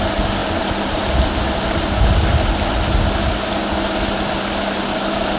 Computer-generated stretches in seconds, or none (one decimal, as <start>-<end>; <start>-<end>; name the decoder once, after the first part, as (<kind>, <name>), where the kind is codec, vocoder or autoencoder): none